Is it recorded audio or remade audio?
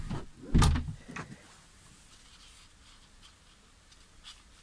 recorded